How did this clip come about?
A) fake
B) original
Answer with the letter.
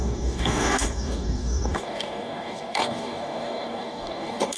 A